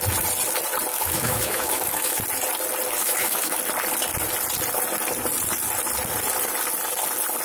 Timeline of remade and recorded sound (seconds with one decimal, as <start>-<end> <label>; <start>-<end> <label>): 0.0-0.9 recorded; 0.9-2.2 remade; 2.2-3.0 recorded; 3.0-3.6 remade; 3.6-7.4 recorded